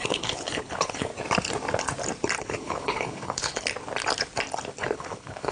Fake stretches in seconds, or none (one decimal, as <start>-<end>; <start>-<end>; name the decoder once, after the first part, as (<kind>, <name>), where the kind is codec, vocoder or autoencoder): 0.0-1.1 (codec, HILCodec); 2.4-3.7; 4.8-5.5